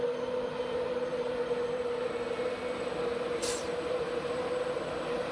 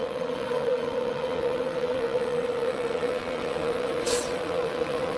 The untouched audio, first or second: first